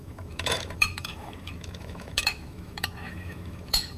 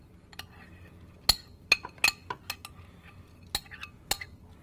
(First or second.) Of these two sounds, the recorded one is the second